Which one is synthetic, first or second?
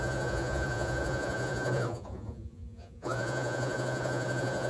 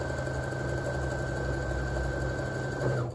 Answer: first